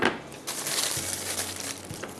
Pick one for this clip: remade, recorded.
recorded